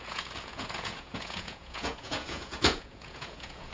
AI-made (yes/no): yes